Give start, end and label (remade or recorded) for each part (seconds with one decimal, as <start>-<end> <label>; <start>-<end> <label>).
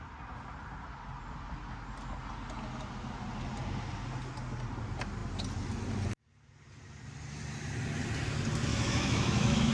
0.0-8.7 recorded; 8.7-9.7 remade